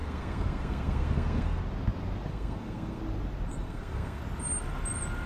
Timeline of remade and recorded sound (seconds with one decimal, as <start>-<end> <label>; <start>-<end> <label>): 0.0-1.6 remade; 1.6-2.3 recorded; 2.3-3.0 remade; 3.0-3.5 recorded; 3.5-4.2 remade; 4.2-5.3 recorded